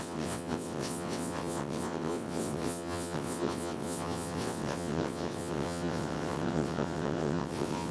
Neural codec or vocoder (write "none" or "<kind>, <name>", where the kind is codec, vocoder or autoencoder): vocoder, WaveNeXt